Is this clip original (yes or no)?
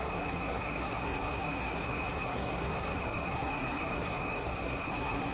no